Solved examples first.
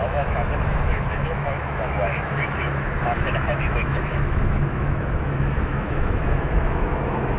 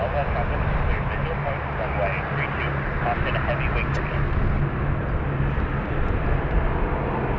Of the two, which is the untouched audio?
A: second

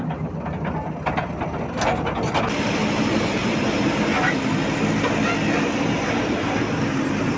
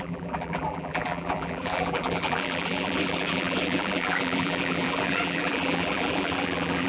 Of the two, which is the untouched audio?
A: first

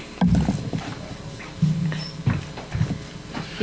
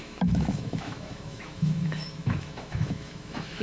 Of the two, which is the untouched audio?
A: first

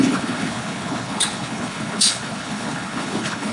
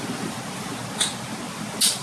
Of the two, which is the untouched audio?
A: second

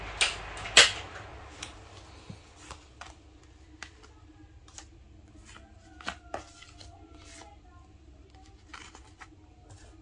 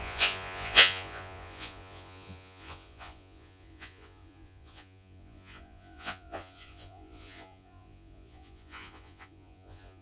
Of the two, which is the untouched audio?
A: first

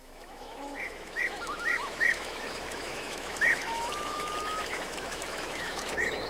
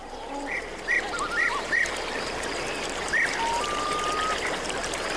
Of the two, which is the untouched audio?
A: second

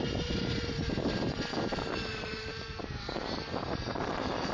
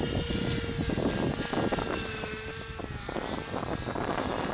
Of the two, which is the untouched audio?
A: second